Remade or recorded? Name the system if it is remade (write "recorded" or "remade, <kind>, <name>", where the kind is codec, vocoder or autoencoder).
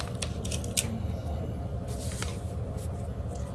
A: recorded